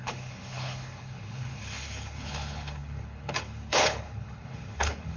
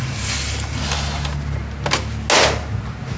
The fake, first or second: first